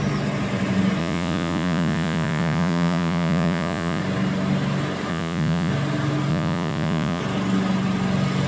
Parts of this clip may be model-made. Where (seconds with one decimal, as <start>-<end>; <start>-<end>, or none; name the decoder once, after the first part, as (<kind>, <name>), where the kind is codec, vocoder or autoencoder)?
1.0-4.0 (vocoder, Vocos); 5.1-5.7; 6.3-7.2